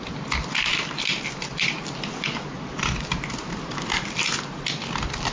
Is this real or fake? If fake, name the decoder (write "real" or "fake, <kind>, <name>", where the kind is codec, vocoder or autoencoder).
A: real